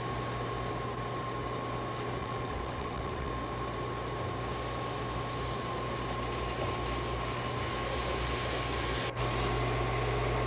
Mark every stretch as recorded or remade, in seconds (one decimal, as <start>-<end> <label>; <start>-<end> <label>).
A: 0.0-2.2 recorded; 2.2-3.3 remade; 3.3-10.5 recorded